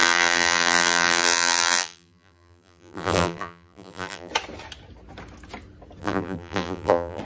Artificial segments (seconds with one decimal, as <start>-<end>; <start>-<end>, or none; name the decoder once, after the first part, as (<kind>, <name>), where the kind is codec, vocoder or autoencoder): 0.0-4.3 (vocoder, BigVGAN v2); 6.0-7.2

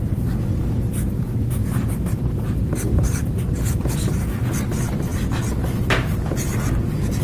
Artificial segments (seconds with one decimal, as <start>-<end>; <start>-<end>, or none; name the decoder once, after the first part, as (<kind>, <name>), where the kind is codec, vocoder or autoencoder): 1.6-4.5 (vocoder, BigVGAN v2)

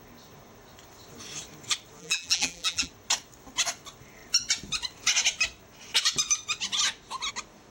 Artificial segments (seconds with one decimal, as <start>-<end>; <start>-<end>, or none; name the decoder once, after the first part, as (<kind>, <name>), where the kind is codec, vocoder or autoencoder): 2.0-2.9 (vocoder, BigVGAN v2)

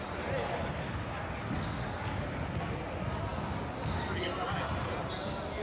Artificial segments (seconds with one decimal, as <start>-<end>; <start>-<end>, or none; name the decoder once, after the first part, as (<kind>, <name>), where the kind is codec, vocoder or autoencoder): none

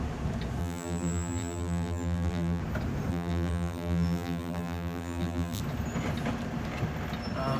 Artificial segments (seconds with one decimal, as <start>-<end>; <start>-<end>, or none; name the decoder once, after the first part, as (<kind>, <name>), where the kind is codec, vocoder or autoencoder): 0.6-2.6 (vocoder, BigVGAN v2); 3.1-5.6

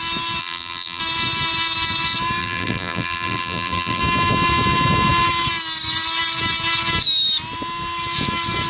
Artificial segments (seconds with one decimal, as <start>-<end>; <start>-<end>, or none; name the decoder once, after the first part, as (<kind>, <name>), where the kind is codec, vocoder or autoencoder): 0.4-1.0 (vocoder, BigVGAN v2); 2.4-4.0